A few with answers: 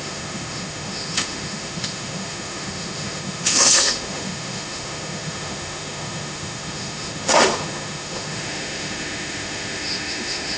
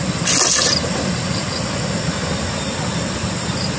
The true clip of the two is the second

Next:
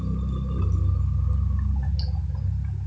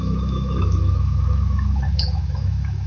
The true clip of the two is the first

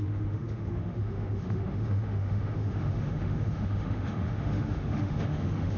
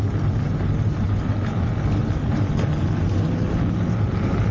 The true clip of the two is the second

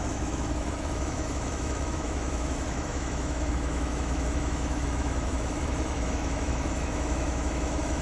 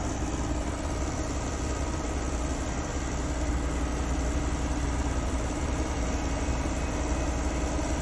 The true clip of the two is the second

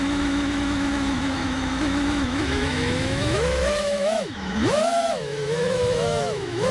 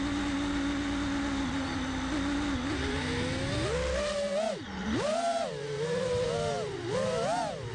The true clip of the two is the second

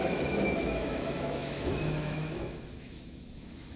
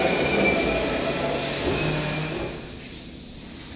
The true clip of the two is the second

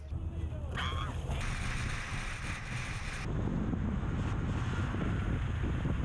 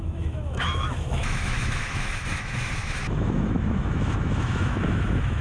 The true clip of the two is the first